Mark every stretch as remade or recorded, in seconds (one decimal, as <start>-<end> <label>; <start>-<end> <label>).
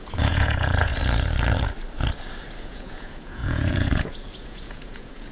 0.0-0.9 remade; 0.9-2.6 recorded; 2.6-5.3 remade